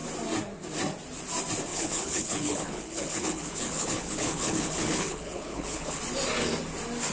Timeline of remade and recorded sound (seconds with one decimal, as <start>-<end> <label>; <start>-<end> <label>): 0.0-1.7 recorded; 1.7-6.0 remade; 6.0-7.1 recorded